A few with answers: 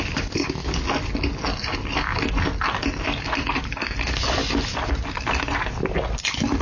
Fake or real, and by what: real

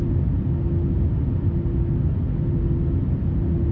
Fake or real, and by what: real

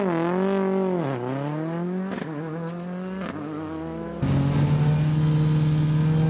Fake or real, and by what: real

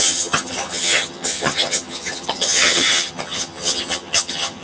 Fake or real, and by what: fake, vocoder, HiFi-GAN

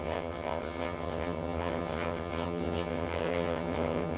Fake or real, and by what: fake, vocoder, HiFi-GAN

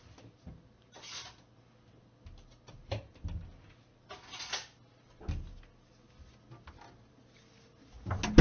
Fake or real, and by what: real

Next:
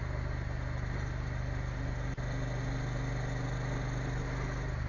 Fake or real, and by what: real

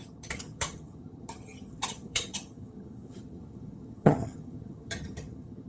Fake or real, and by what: fake, vocoder, HiFi-GAN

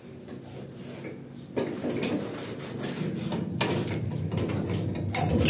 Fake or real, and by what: real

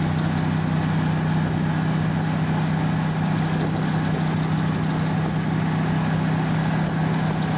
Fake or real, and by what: real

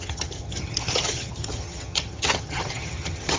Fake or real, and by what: fake, vocoder, HiFi-GAN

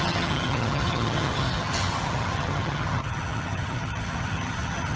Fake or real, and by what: fake, vocoder, HiFi-GAN